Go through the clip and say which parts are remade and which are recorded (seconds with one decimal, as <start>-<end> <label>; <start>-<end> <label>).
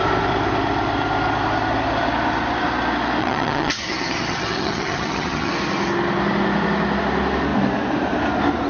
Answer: 0.0-3.2 recorded; 3.2-5.5 remade; 5.5-8.7 recorded